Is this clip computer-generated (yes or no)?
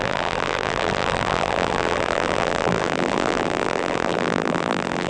yes